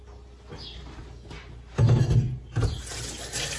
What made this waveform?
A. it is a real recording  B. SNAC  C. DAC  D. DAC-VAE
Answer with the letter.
A